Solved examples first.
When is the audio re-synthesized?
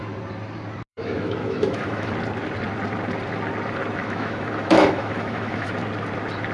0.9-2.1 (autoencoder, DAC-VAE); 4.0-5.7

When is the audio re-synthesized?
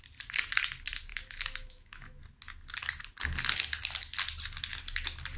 1.1-2.2 (autoencoder, DAC-VAE)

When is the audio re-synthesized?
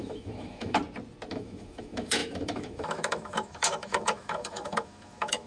0.0-0.8 (autoencoder, DAC-VAE); 1.3-5.5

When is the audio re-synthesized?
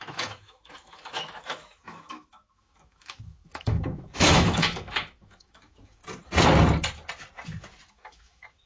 0.0-6.0 (autoencoder, DAC-VAE); 7.9-8.7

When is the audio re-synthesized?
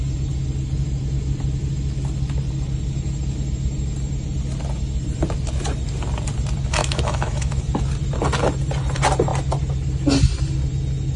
6.8-7.6 (autoencoder, DAC-VAE)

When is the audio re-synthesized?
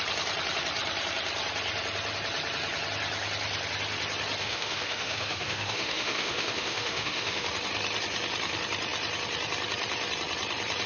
4.4-7.5 (autoencoder, DAC-VAE)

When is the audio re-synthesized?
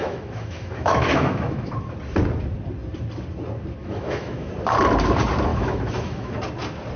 0.0-1.7 (autoencoder, DAC-VAE); 3.8-4.5; 5.5-6.4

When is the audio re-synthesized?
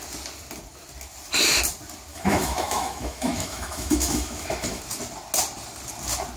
2.1-4.8 (autoencoder, DAC-VAE)